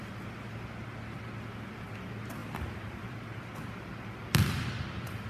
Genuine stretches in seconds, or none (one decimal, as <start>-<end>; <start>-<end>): 0.0-2.4; 3.7-5.3